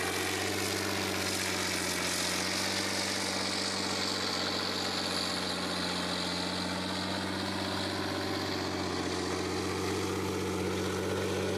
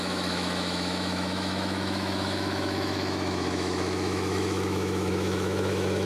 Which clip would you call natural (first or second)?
first